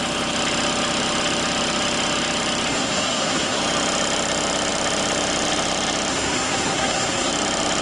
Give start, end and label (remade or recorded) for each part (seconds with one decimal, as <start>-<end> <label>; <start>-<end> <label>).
0.0-2.7 recorded; 2.7-3.6 remade; 3.6-6.1 recorded; 6.1-7.3 remade; 7.3-7.8 recorded